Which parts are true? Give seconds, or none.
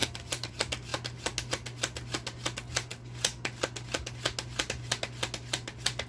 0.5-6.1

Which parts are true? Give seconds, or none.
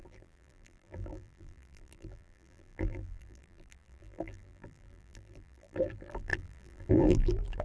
none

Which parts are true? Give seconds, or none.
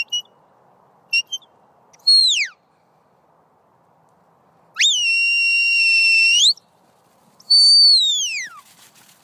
0.0-2.2; 2.9-5.6; 6.4-9.2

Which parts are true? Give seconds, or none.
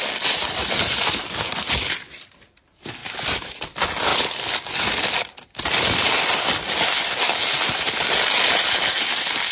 0.0-0.6; 1.2-3.0; 3.5-9.5